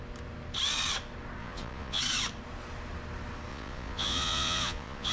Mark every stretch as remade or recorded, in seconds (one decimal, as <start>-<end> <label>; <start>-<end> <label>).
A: 0.0-1.4 recorded; 1.4-2.0 remade; 2.0-3.5 recorded; 3.5-5.1 remade